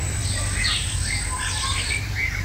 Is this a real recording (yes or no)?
no